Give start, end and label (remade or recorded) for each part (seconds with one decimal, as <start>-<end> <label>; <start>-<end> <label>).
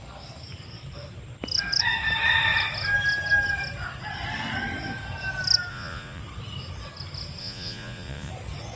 0.0-5.7 recorded; 5.7-6.2 remade; 6.2-7.4 recorded; 7.4-8.3 remade; 8.3-8.8 recorded